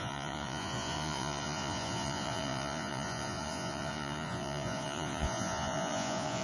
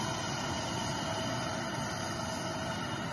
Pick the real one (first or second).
second